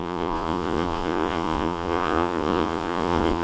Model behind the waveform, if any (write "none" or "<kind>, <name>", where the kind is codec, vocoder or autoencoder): vocoder, Vocos